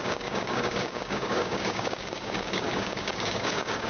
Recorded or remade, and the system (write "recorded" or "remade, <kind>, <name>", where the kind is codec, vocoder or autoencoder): remade, codec, DAC